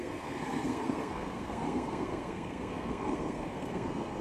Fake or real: fake